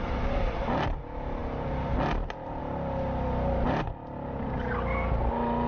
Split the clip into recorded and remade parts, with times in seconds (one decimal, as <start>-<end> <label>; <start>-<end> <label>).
0.0-5.7 recorded